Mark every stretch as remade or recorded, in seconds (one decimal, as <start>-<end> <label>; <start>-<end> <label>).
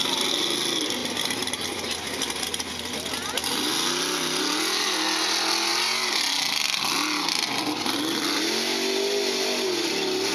0.0-10.3 recorded